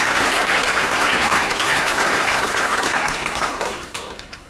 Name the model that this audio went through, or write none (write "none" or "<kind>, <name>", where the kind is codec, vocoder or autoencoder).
codec, SNAC